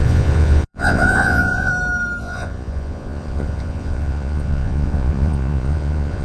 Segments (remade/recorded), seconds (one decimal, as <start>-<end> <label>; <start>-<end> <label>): 0.0-1.7 remade; 1.7-2.2 recorded; 2.2-6.2 remade